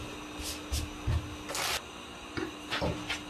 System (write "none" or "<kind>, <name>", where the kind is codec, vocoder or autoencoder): none